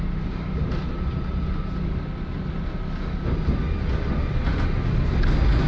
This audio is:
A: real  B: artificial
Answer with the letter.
A